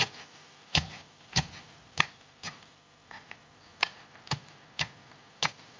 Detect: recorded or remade recorded